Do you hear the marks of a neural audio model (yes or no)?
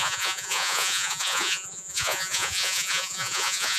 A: yes